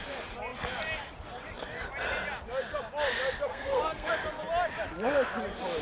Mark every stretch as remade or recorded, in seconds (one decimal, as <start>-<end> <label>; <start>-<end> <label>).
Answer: 0.0-3.5 recorded; 3.5-4.1 remade; 4.1-5.8 recorded